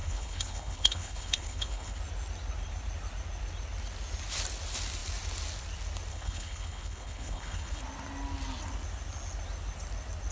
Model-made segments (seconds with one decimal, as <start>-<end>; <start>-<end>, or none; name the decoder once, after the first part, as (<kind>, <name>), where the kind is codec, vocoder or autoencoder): 0.0-2.0 (codec, HILCodec); 6.1-7.8